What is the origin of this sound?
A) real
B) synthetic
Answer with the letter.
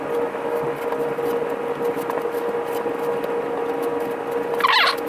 A